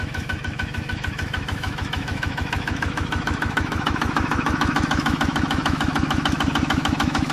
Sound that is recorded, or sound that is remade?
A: remade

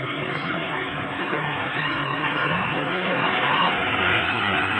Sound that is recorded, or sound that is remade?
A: remade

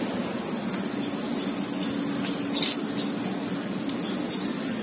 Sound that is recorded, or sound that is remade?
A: recorded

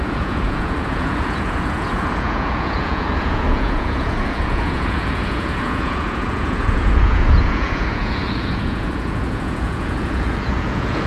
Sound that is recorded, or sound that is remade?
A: remade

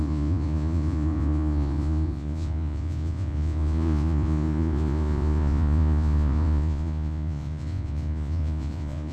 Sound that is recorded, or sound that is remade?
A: remade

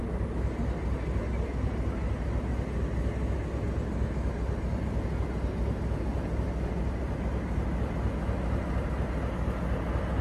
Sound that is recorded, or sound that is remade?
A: recorded